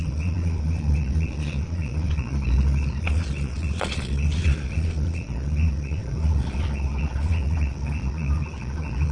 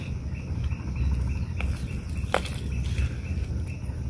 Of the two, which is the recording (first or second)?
second